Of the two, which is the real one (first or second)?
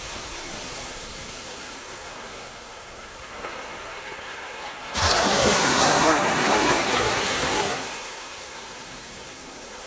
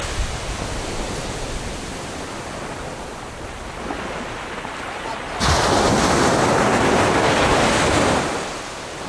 second